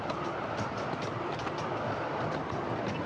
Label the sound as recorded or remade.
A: recorded